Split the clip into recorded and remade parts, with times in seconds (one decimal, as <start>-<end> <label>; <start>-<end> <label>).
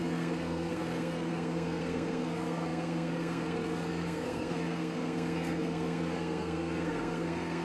0.0-7.6 remade